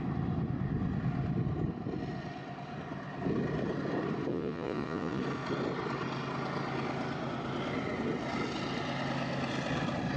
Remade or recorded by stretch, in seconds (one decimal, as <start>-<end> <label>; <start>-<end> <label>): 0.0-4.3 recorded; 4.3-5.2 remade; 5.2-10.2 recorded